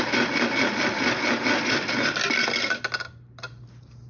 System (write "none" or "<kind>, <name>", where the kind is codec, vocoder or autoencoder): none